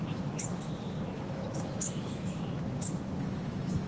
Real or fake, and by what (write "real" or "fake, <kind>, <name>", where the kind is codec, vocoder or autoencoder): fake, autoencoder, DAC-VAE